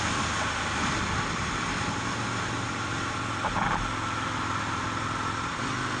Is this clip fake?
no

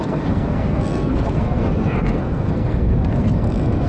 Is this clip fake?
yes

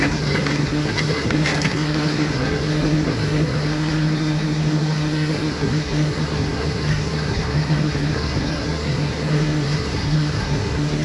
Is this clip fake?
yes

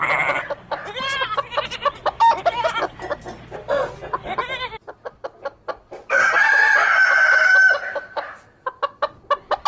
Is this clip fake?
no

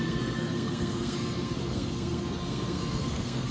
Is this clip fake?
yes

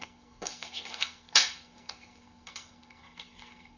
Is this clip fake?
yes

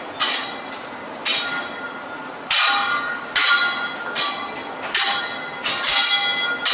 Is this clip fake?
no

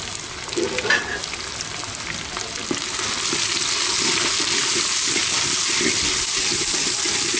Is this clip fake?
no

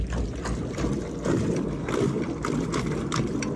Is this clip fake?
no